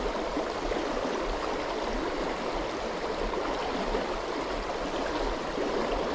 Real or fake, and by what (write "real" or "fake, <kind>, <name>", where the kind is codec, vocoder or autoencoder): real